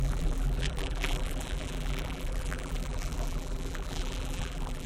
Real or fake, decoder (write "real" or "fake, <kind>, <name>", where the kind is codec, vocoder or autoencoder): fake, vocoder, BigVGAN v2